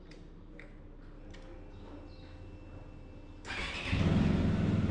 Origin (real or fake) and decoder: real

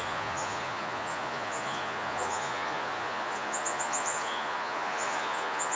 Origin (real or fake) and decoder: fake, vocoder, Vocos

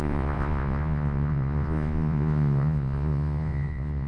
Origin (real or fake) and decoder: fake, vocoder, Vocos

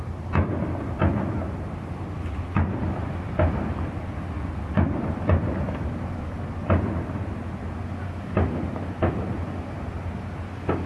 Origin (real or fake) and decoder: real